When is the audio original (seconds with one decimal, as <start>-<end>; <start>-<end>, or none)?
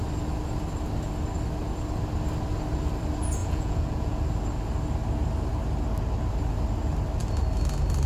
0.0-3.4; 4.2-8.1